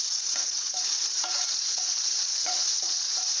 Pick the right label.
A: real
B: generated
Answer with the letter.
B